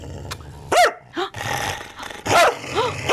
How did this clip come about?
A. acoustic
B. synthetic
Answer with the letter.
B